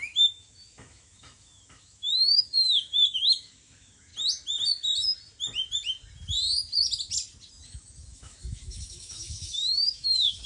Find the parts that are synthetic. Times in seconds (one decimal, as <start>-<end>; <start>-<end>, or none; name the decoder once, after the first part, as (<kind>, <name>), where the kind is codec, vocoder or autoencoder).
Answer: 0.0-4.1 (autoencoder, DAC-VAE); 7.5-10.5